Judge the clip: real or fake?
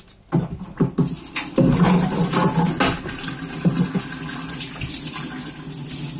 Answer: real